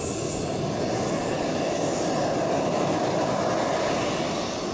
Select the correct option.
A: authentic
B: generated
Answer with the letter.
A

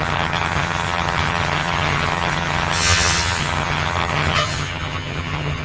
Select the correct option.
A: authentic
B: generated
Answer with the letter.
B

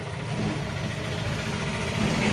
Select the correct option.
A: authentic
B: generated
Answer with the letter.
A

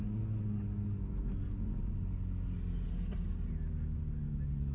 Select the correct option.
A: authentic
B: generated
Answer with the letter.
A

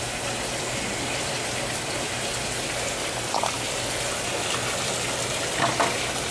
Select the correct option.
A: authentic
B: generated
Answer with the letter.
A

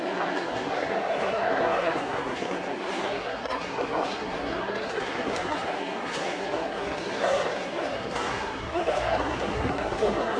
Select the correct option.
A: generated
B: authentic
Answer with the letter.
A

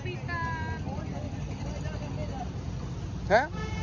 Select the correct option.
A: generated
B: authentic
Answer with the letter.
B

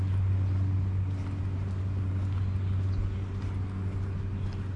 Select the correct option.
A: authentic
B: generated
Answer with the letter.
A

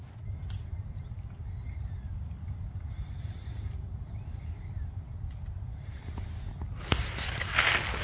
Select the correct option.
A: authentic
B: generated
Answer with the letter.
A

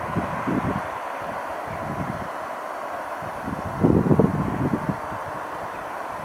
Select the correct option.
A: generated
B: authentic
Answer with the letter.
B